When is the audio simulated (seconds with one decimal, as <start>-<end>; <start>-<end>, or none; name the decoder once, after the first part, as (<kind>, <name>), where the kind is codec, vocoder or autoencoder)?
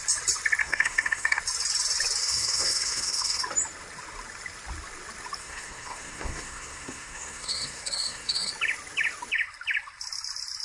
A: 0.6-1.4 (codec, SNAC); 2.2-3.4; 5.4-8.5